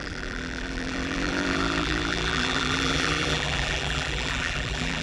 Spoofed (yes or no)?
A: yes